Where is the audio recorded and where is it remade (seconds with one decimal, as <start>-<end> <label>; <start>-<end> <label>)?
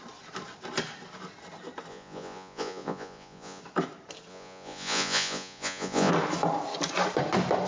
0.0-1.9 recorded; 1.9-3.6 remade; 3.6-4.3 recorded; 4.3-6.1 remade; 6.1-7.7 recorded